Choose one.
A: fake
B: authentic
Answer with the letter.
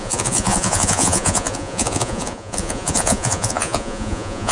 A